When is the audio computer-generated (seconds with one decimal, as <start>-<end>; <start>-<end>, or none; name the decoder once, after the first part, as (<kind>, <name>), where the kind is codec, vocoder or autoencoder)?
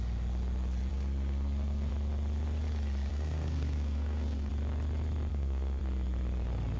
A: 0.9-1.9 (codec, SNAC); 3.1-4.5; 5.3-5.8